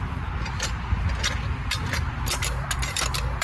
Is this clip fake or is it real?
fake